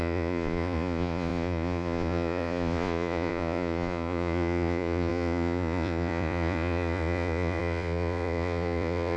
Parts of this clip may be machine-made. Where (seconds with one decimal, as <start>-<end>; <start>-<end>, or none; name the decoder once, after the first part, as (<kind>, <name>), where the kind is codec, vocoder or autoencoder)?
0.0-9.2 (vocoder, Vocos)